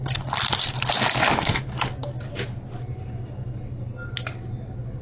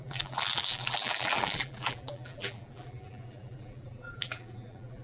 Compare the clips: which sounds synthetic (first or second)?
second